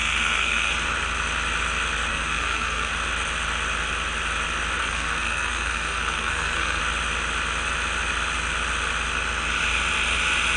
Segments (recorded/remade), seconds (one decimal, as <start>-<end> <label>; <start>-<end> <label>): 0.0-0.7 remade; 0.7-2.1 recorded; 2.1-2.9 remade; 2.9-4.8 recorded; 4.8-6.8 remade; 6.8-10.6 recorded